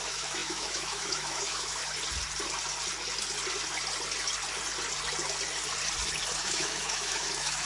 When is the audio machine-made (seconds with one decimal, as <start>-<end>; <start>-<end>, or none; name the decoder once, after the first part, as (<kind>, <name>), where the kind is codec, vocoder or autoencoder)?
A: 0.0-1.8 (autoencoder, DAC-VAE); 6.4-7.7

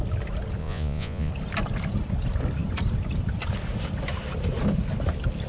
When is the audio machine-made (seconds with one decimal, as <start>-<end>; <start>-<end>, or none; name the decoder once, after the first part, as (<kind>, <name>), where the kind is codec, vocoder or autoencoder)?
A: 0.6-1.3 (vocoder, Vocos)

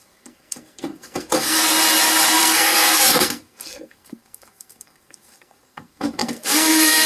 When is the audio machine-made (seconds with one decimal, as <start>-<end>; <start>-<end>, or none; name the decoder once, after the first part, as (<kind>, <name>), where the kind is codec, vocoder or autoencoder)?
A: 0.0-1.6 (codec, SNAC); 2.4-7.1

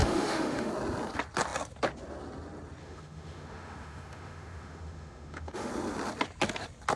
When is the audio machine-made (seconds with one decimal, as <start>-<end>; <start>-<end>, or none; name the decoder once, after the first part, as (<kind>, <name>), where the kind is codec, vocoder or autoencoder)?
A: 0.0-0.7 (autoencoder, DAC-VAE); 2.8-5.7